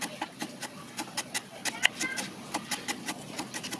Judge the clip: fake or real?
real